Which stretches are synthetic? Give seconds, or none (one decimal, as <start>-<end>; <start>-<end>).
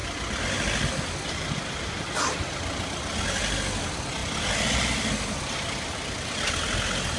none